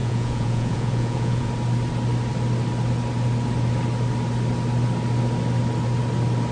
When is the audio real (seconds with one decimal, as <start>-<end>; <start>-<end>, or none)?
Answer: 1.5-6.5